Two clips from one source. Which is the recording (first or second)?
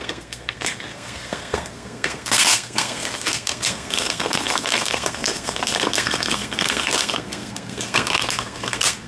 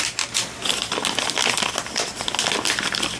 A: second